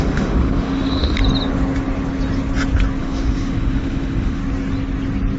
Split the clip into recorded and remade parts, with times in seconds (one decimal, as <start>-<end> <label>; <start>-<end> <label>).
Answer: 0.0-1.2 remade; 1.2-3.0 recorded; 3.0-4.4 remade; 4.4-5.4 recorded